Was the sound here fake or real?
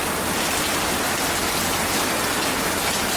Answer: real